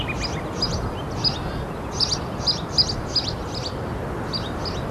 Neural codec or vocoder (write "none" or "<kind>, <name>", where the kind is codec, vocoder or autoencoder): none